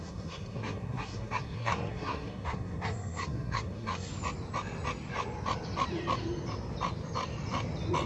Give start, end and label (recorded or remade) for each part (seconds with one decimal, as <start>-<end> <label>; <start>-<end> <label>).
0.0-4.1 remade; 4.1-8.1 recorded